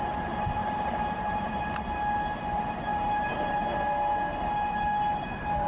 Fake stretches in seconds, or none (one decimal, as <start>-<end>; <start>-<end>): 0.6-1.6; 2.9-3.6